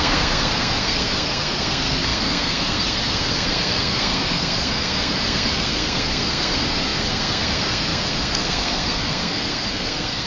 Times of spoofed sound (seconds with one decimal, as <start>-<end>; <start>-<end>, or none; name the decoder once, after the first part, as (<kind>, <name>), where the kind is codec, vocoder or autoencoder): 0.0-10.3 (codec, SNAC)